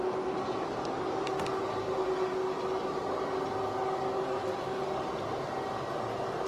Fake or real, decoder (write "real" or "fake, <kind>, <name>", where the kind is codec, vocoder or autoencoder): real